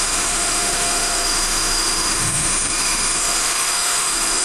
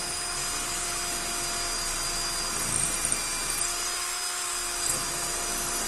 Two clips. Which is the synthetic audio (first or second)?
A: first